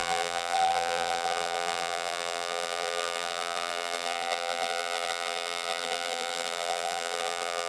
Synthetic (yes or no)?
yes